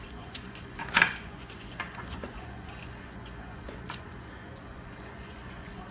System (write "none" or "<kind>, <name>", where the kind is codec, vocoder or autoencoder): vocoder, Vocos